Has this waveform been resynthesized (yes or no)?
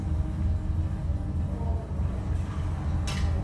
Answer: no